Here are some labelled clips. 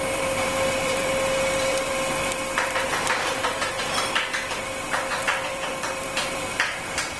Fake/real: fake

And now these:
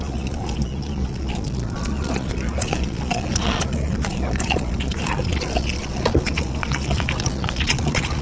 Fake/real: fake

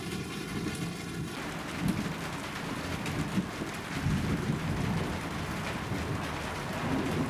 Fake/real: real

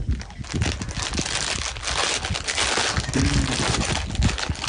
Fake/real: real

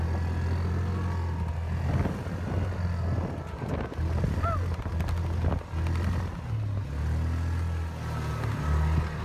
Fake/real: real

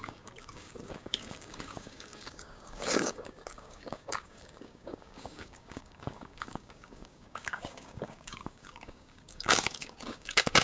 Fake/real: fake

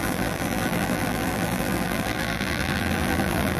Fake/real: fake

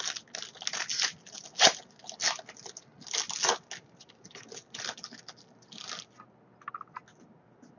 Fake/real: real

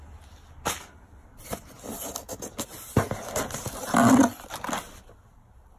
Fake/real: real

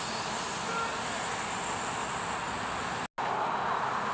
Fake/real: real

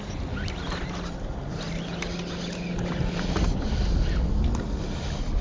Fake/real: real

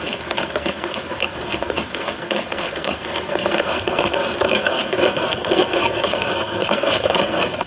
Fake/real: fake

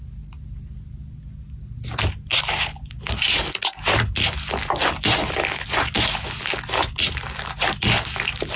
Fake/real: real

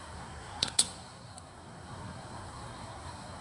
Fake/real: fake